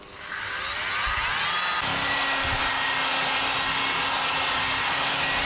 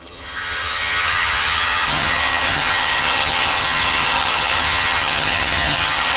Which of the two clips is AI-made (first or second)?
second